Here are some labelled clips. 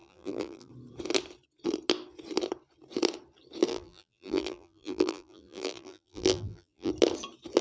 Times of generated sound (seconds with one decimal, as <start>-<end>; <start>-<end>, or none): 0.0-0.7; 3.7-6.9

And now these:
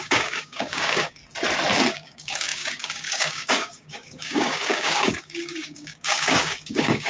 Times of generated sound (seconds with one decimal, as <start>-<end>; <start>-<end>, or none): 0.0-1.2; 1.9-7.1

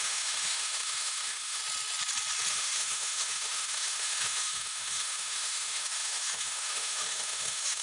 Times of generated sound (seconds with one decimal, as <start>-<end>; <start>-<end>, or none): 0.0-1.6; 2.5-7.8

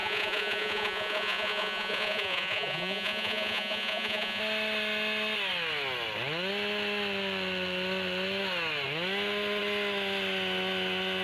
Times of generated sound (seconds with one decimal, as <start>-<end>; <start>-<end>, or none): 0.0-4.4

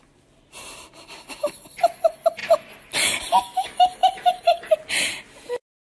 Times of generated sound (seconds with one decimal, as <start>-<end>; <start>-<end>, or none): 4.0-4.7